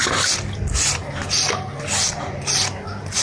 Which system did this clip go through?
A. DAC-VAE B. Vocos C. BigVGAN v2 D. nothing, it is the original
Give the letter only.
D